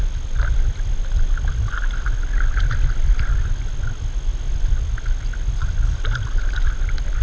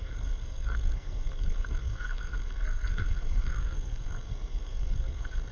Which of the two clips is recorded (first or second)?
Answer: first